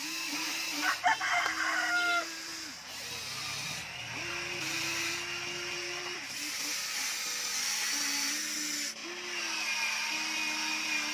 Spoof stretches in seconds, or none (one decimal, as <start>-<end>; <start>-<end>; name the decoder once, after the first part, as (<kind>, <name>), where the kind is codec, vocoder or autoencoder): 3.8-4.3 (vocoder, BigVGAN v2); 5.8-6.7